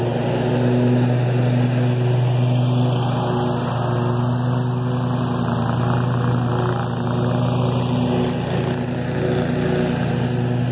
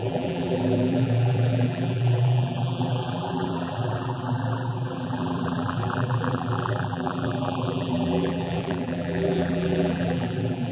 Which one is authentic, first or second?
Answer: first